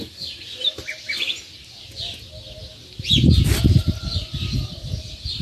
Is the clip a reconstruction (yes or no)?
no